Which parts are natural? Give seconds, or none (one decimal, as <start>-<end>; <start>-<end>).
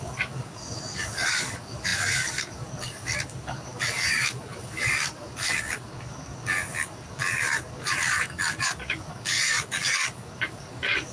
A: none